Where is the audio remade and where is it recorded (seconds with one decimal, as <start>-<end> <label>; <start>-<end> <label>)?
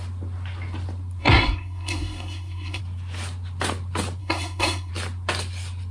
0.0-1.2 recorded; 1.2-2.8 remade; 2.8-4.2 recorded; 4.2-4.9 remade; 4.9-5.9 recorded